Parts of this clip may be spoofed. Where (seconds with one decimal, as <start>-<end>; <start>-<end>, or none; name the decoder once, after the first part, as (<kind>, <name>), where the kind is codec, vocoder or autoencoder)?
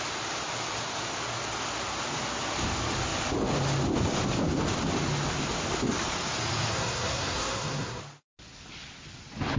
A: 6.7-8.0 (codec, SNAC)